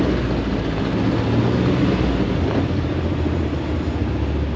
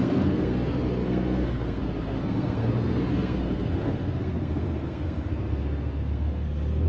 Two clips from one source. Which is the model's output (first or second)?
second